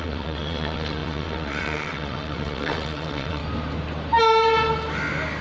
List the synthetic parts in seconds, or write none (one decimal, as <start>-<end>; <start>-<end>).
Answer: 0.0-3.4